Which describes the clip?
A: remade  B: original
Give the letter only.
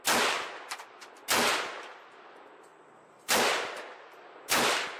B